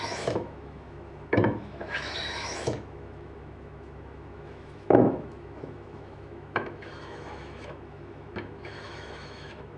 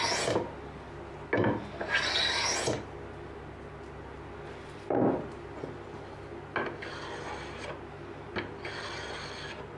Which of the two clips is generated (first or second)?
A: first